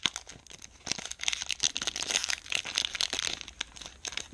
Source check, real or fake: real